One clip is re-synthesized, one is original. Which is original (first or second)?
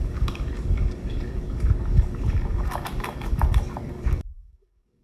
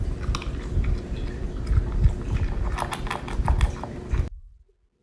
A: second